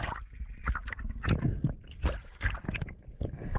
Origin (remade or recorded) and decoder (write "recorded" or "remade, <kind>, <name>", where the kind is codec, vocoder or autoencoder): recorded